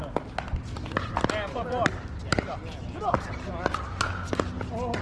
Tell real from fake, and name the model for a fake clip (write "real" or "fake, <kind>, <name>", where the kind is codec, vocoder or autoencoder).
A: real